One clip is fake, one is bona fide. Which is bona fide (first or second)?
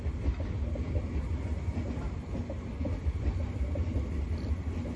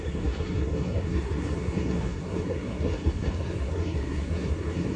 first